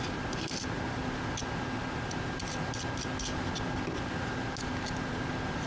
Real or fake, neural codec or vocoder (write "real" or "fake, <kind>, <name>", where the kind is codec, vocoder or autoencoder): real